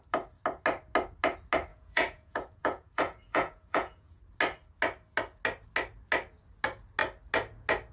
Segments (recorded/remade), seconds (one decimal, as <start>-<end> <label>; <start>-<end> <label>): 0.0-1.7 recorded; 1.7-4.2 remade; 4.2-7.9 recorded